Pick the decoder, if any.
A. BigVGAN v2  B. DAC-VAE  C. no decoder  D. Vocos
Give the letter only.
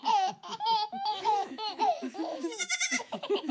B